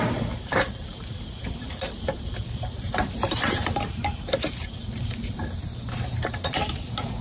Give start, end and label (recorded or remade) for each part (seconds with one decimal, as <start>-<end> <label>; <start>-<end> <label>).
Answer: 0.0-7.2 remade